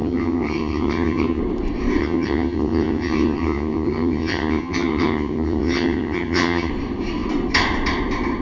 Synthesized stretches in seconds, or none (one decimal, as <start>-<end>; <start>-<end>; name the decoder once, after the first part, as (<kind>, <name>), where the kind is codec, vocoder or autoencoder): 0.0-1.4 (vocoder, HiFi-GAN); 2.0-6.7